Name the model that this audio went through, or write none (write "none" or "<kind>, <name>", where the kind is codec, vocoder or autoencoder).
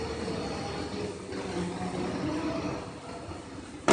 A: none